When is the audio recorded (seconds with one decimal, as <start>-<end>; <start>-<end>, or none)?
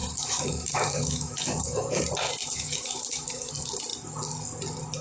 2.0-2.4; 3.5-5.0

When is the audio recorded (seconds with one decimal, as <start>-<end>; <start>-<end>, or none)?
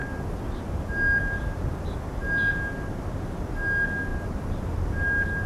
0.0-5.5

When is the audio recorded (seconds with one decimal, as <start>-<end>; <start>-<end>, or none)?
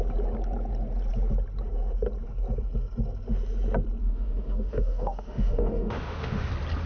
0.0-4.0; 6.5-6.9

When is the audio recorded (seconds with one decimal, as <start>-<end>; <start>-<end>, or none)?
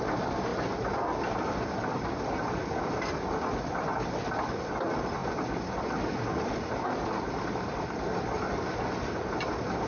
0.0-9.9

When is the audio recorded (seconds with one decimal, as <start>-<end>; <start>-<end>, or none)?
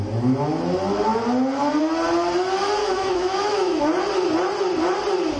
0.0-2.8; 3.8-5.4